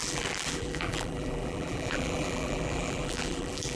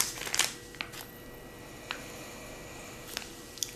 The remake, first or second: first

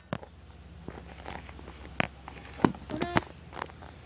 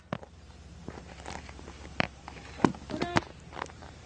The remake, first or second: second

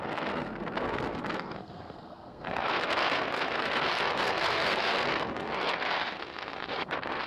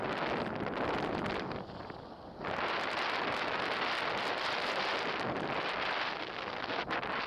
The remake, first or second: first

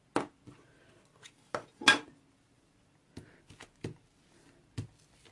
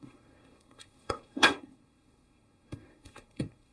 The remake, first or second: second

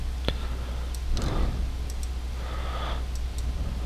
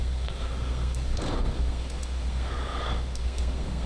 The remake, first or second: second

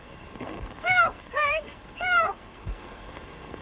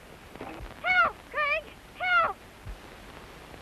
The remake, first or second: first